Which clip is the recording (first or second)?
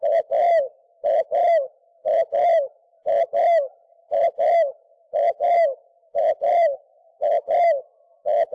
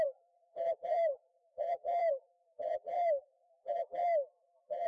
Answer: first